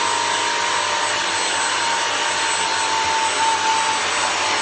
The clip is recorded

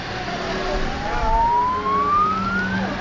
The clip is recorded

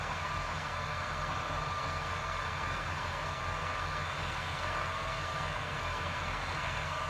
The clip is remade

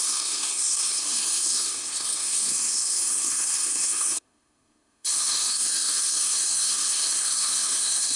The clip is remade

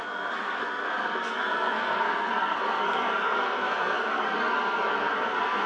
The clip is remade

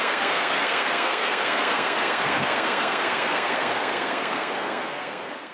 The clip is remade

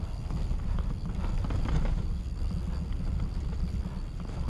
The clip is recorded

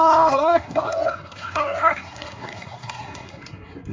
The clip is remade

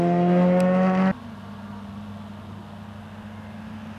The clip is recorded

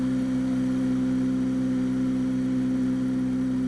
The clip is recorded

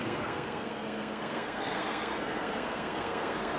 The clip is remade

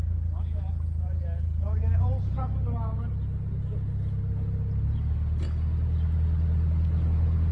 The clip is recorded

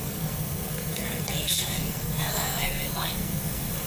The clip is remade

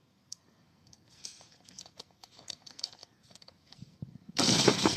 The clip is remade